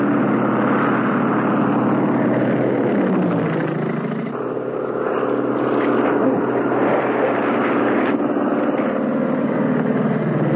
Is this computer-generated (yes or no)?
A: no